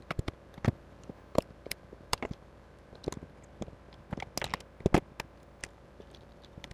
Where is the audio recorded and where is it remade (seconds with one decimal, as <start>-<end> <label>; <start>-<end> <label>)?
0.0-3.0 remade; 3.0-5.7 recorded; 5.7-6.7 remade